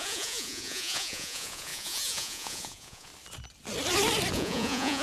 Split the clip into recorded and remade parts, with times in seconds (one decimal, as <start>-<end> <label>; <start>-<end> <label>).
0.0-3.1 remade; 3.1-4.3 recorded; 4.3-5.0 remade